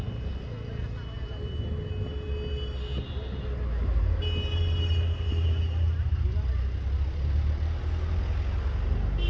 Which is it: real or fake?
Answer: real